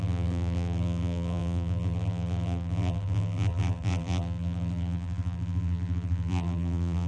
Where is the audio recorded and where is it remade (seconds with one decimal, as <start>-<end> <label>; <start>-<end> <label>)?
0.0-7.1 remade